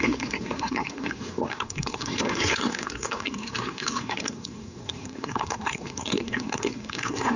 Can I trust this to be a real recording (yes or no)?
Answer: no